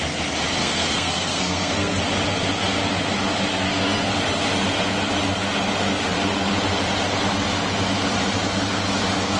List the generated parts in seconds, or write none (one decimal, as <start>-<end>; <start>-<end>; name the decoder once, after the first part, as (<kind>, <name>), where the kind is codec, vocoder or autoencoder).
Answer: 0.6-2.0 (codec, SNAC); 3.5-4.1